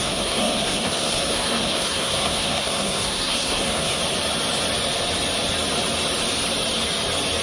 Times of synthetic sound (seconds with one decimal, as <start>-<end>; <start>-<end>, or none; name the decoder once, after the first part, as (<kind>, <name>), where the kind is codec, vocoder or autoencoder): 0.0-4.0 (codec, SNAC)